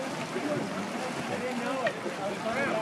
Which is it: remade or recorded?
recorded